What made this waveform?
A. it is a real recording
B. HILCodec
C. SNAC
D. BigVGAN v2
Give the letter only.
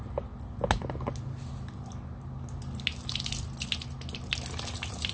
A